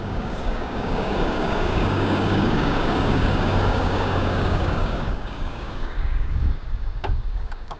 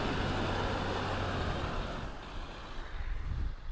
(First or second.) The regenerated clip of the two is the first